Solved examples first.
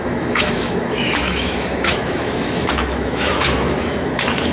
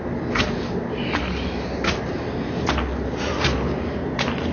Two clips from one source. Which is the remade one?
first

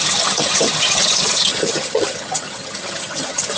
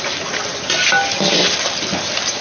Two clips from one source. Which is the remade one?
first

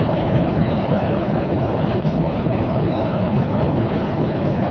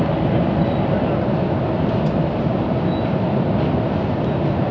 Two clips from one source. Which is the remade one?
first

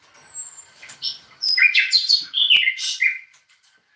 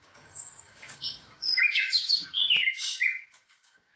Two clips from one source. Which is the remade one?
second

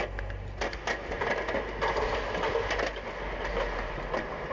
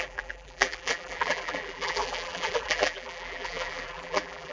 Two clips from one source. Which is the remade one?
second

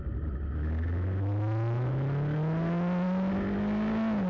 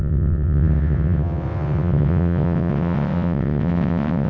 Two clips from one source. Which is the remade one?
second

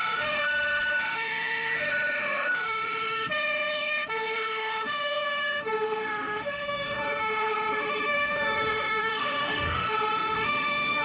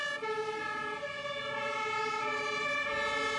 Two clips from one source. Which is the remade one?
first